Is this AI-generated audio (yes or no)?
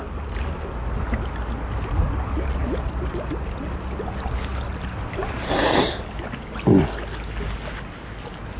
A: no